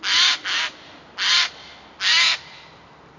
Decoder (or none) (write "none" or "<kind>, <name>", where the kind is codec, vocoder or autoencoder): none